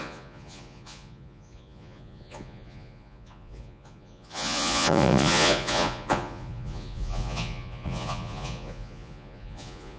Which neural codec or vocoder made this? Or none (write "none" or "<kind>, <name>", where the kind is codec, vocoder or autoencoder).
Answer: vocoder, Vocos